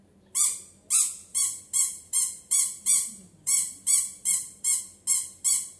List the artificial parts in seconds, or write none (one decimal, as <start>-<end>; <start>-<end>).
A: 1.3-4.8